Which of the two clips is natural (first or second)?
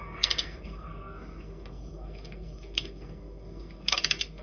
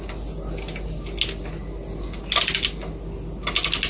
second